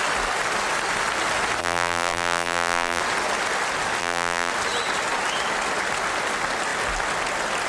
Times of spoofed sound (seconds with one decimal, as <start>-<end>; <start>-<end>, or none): 1.6-3.0; 4.0-4.5